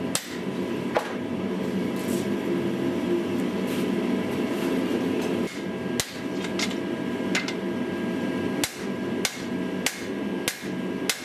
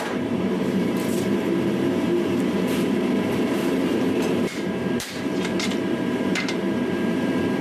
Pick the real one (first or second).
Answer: first